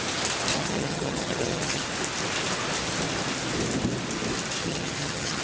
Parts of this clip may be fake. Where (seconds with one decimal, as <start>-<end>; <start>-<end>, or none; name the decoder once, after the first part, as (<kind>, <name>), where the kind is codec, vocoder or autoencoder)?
0.5-1.8 (vocoder, HiFi-GAN); 4.6-5.4